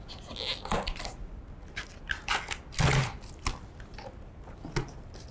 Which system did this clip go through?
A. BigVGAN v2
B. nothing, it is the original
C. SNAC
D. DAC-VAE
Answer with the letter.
B